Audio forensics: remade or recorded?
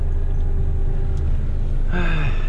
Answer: recorded